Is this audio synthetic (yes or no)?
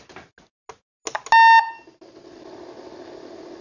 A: no